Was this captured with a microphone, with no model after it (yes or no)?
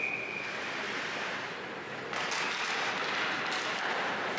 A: no